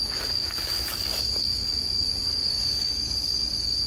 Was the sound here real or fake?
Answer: fake